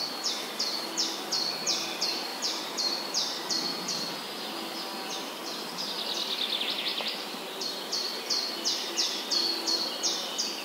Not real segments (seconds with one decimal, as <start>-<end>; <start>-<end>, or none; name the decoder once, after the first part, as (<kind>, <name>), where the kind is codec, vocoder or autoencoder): 2.3-4.2 (vocoder, BigVGAN v2); 6.9-7.8